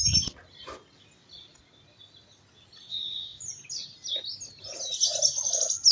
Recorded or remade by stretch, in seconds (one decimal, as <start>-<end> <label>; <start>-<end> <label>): 0.0-2.9 recorded; 2.9-3.4 remade; 3.4-5.9 recorded